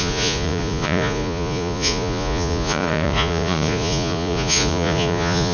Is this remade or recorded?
remade